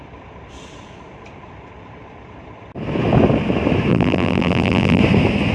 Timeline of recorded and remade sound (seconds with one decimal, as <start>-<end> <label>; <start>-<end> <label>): 0.0-3.9 recorded; 3.9-5.0 remade; 5.0-5.5 recorded